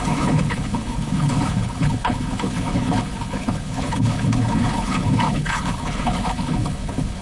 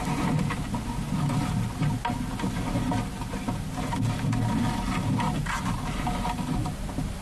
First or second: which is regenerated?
first